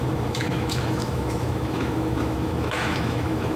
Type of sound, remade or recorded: remade